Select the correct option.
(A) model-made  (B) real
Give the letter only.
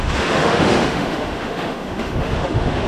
A